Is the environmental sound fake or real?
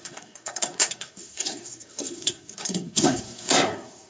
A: fake